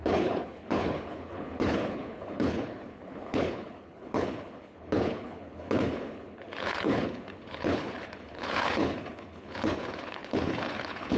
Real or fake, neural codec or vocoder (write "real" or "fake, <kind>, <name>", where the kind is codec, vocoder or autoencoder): fake, codec, HILCodec